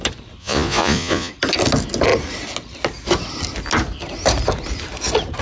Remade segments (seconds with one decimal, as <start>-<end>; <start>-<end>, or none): 0.4-1.3